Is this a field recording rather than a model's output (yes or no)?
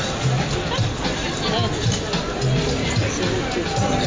yes